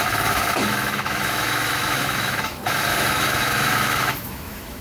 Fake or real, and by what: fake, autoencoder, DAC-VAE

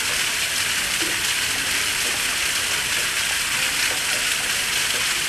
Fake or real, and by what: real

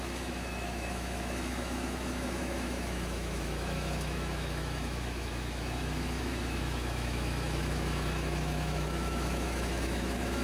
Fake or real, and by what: fake, autoencoder, DAC-VAE